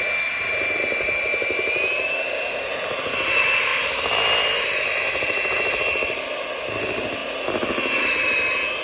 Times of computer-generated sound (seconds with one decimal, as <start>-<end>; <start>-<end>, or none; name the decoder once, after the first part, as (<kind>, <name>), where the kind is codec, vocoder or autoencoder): none